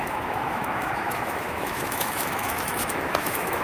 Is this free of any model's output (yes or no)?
no